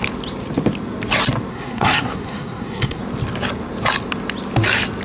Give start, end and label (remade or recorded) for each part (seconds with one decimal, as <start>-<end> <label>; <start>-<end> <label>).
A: 0.0-1.5 recorded; 1.5-3.0 remade; 3.0-5.0 recorded